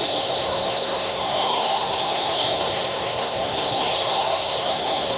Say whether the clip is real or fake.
fake